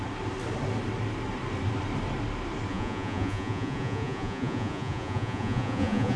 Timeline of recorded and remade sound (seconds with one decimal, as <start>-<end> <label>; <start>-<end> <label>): 0.0-2.7 recorded; 2.7-6.2 remade

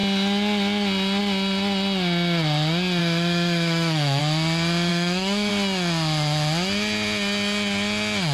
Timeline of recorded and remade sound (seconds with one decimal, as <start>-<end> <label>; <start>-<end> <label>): 0.0-3.0 recorded; 3.0-4.2 remade; 4.2-4.9 recorded; 4.9-5.5 remade; 5.5-8.3 recorded

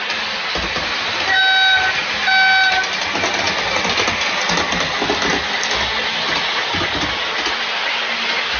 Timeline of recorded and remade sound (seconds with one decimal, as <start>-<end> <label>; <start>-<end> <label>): 0.0-8.6 recorded

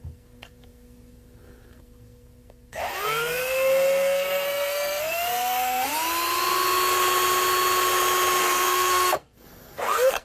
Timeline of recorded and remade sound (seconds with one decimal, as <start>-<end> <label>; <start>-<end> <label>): 0.0-5.9 remade; 5.9-8.4 recorded; 8.4-10.2 remade